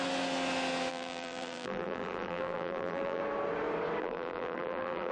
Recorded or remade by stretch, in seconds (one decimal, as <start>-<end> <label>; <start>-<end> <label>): 0.0-0.9 recorded; 0.9-3.2 remade; 3.2-4.0 recorded; 4.0-5.1 remade